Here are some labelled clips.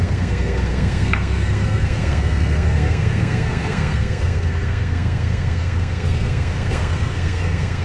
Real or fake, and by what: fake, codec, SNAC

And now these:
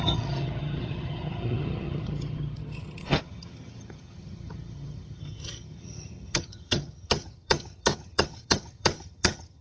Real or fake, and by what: fake, vocoder, HiFi-GAN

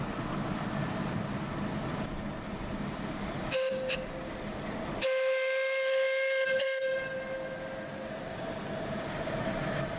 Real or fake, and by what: real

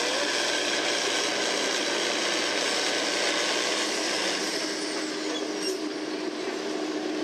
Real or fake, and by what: real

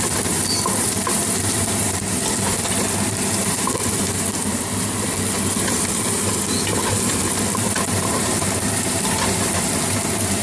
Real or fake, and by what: fake, vocoder, BigVGAN v2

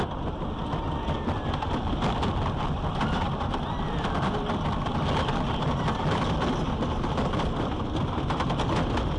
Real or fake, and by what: real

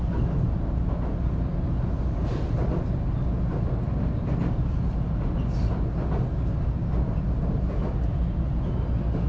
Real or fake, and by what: real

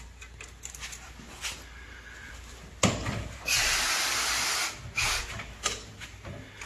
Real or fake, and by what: real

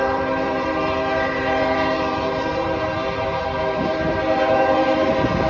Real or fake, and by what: fake, vocoder, BigVGAN v2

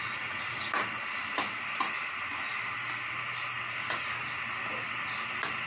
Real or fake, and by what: real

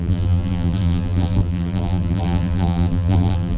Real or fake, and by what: fake, vocoder, BigVGAN v2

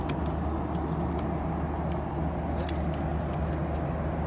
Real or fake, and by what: real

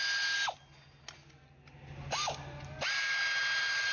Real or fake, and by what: real